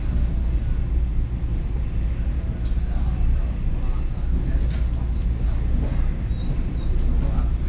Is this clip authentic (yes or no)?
yes